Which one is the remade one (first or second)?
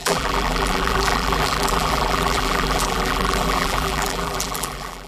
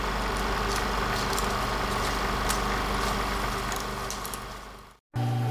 first